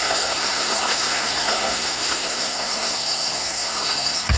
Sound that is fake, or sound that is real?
fake